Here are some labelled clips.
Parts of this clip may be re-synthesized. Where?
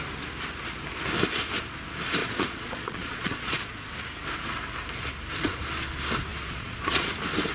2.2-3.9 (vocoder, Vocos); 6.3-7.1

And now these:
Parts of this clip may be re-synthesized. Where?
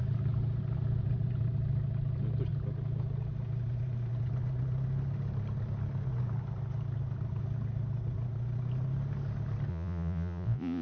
9.7-10.8 (vocoder, Vocos)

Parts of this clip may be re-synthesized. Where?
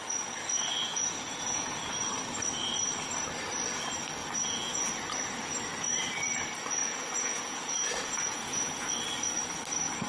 0.7-1.9 (vocoder, Vocos); 4.2-4.9; 6.8-8.9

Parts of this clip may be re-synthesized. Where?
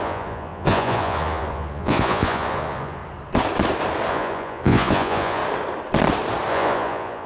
0.0-3.0 (vocoder, Vocos); 4.1-5.4; 6.5-7.3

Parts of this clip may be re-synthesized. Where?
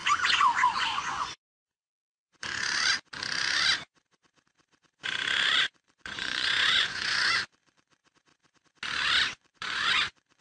0.0-1.5 (vocoder, Vocos); 5.6-8.0; 9.3-10.4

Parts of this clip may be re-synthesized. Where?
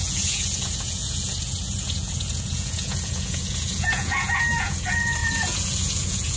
0.0-6.4 (vocoder, Vocos)